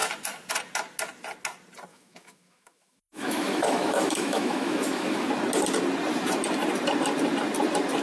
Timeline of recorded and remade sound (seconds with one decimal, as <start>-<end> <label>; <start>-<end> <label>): 0.0-1.9 recorded; 1.9-5.3 remade; 5.3-8.0 recorded

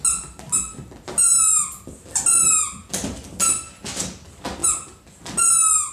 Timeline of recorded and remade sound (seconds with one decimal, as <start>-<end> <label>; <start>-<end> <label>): 0.0-5.9 recorded

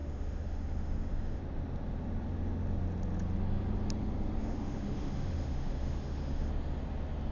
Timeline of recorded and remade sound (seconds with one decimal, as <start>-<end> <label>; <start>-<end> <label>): 0.0-1.4 remade; 1.4-4.4 recorded; 4.4-6.5 remade; 6.5-7.3 recorded

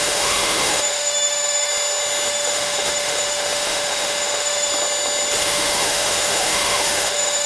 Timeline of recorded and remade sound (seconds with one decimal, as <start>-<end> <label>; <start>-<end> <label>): 0.0-1.7 remade; 1.7-2.3 recorded; 2.3-4.7 remade; 4.7-5.4 recorded; 5.4-7.5 remade

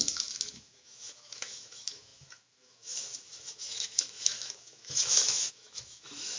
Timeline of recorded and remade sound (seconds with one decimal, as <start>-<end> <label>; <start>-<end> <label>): 0.0-6.4 remade

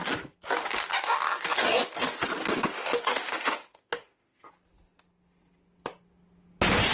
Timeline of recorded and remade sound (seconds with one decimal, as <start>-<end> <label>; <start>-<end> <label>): 0.0-2.7 recorded; 2.7-4.5 remade; 4.5-6.9 recorded

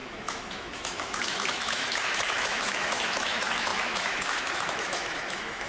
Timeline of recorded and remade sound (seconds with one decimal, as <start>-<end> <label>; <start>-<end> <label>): 0.0-5.7 remade